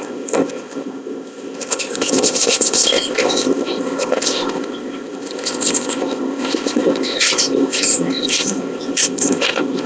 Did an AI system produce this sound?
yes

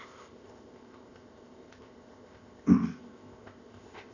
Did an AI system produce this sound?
yes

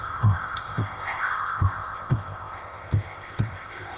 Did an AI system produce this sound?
yes